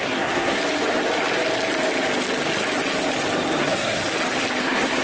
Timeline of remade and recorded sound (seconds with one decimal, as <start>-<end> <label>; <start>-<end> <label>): 0.0-0.6 remade; 0.6-3.6 recorded; 3.6-4.0 remade; 4.0-4.6 recorded; 4.6-5.0 remade